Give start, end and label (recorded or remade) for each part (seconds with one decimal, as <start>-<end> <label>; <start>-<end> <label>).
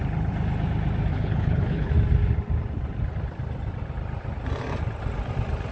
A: 0.0-1.1 recorded; 1.1-1.9 remade; 1.9-5.7 recorded